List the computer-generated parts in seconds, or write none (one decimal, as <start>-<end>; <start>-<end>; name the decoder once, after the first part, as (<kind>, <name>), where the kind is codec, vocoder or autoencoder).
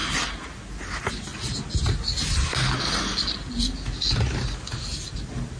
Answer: none